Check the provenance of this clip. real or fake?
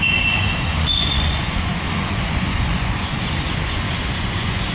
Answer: fake